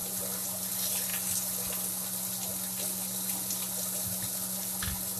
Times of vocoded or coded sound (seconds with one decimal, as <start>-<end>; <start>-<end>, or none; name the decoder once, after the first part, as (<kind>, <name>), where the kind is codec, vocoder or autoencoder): none